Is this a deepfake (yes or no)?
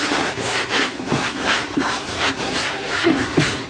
yes